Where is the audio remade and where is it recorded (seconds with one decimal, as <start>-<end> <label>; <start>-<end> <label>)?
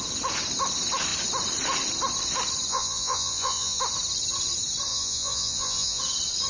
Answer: 0.0-2.7 recorded; 2.7-3.8 remade; 3.8-4.9 recorded; 4.9-6.0 remade; 6.0-6.5 recorded